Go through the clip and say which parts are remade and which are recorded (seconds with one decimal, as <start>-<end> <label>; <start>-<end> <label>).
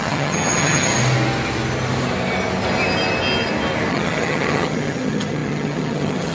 0.0-0.9 remade; 0.9-3.9 recorded; 3.9-6.3 remade